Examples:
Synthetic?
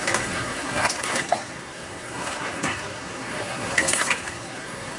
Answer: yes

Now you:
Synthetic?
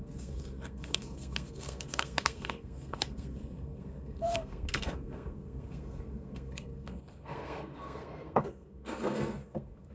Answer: yes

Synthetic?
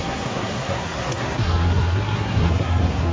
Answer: yes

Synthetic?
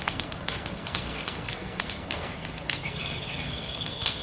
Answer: yes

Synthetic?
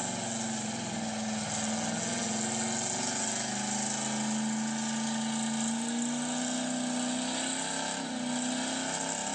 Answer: no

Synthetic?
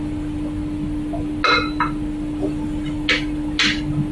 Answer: no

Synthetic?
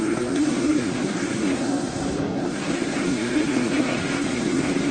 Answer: yes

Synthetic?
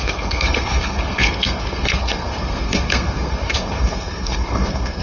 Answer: yes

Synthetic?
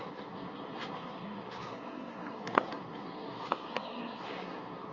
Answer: yes